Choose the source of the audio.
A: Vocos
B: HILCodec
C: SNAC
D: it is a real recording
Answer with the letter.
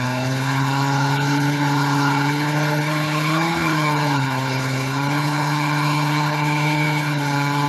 B